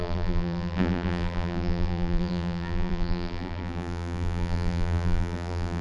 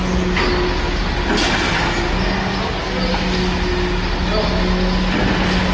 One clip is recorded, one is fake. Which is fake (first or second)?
first